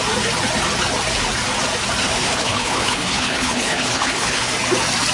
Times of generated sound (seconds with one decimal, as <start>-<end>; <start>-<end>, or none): 2.0-4.5